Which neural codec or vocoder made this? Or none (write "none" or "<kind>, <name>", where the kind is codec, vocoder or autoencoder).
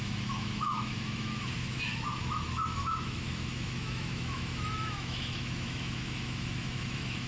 autoencoder, DAC-VAE